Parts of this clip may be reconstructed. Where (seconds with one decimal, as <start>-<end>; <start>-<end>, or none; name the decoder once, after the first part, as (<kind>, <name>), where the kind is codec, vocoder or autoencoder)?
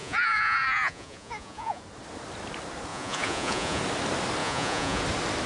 0.0-1.8 (vocoder, Vocos); 2.9-3.8; 4.4-5.0